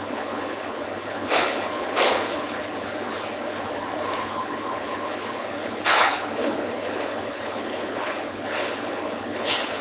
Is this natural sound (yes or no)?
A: no